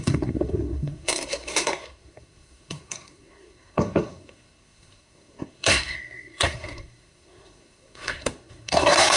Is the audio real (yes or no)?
no